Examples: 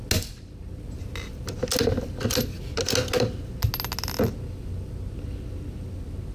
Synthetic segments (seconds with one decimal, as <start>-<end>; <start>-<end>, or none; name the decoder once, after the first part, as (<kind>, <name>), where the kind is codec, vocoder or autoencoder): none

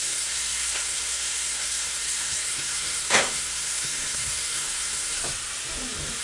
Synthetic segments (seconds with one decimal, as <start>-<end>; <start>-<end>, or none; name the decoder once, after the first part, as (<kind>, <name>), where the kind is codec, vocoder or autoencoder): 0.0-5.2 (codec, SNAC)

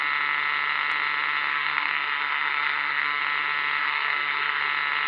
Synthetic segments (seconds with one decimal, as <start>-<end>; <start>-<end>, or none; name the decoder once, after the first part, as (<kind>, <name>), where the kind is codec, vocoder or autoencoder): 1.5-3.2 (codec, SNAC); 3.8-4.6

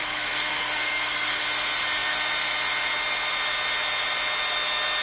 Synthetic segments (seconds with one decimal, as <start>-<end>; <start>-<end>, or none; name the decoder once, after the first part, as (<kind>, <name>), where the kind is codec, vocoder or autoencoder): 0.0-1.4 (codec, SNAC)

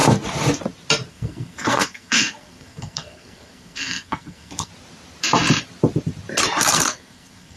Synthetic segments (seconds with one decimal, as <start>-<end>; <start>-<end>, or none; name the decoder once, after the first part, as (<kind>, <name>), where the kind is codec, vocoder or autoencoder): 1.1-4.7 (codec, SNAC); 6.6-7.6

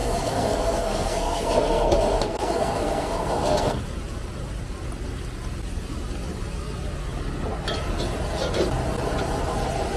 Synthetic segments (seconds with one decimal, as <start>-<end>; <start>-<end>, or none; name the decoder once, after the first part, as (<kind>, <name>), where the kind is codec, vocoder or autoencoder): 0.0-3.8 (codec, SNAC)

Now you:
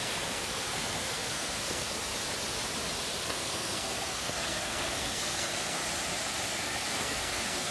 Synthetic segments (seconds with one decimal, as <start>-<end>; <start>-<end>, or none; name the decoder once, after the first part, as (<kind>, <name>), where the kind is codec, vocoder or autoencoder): 0.0-2.1 (codec, SNAC); 3.2-5.8; 6.5-7.7

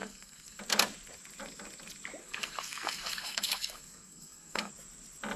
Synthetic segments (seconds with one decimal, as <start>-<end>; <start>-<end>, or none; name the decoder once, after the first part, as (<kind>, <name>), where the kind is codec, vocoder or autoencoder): 0.0-0.6 (codec, SNAC); 2.2-4.7